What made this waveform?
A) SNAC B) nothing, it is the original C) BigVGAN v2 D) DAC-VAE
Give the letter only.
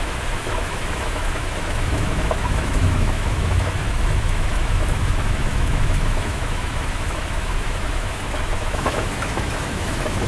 D